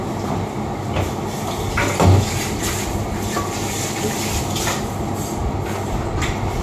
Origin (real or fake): real